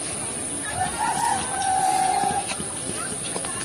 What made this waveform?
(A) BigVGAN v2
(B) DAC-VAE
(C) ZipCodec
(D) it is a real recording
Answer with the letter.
D